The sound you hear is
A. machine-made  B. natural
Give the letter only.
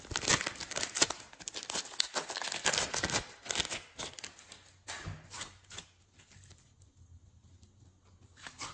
B